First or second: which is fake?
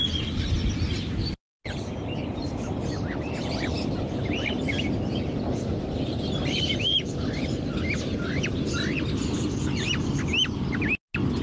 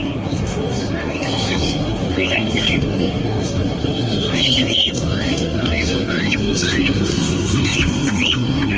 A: second